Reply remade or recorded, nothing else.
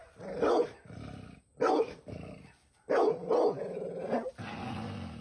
recorded